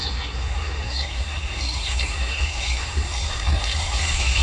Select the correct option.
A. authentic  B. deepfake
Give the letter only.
B